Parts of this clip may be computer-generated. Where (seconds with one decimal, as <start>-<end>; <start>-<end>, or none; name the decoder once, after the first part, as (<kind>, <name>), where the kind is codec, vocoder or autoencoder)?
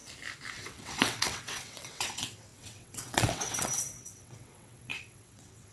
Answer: 0.5-5.7 (vocoder, WaveNeXt)